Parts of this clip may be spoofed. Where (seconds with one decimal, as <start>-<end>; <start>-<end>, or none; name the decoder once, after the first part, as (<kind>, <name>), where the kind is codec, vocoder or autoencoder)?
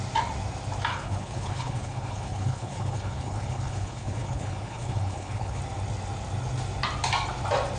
0.9-5.6 (codec, HILCodec)